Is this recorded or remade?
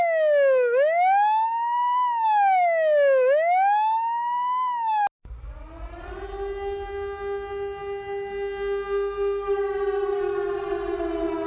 recorded